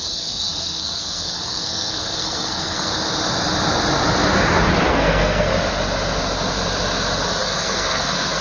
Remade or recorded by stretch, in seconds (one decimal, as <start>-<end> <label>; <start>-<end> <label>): 0.0-2.9 remade; 2.9-4.9 recorded; 4.9-5.5 remade; 5.5-7.4 recorded; 7.4-8.4 remade